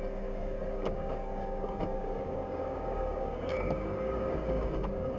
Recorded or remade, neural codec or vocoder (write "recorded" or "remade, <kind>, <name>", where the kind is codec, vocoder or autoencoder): remade, codec, DAC